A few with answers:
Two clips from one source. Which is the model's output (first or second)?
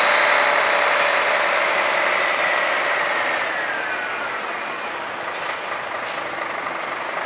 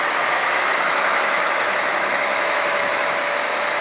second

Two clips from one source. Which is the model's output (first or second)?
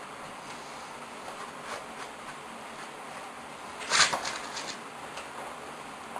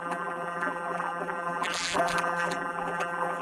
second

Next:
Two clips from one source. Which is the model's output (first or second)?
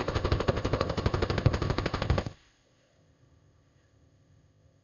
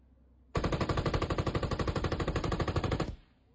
first